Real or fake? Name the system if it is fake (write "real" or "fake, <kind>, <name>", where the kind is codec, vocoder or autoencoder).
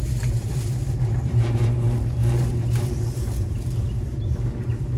fake, vocoder, BigVGAN v2